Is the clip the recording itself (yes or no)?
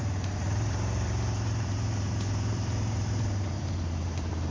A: no